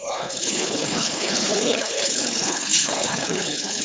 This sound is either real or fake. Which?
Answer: fake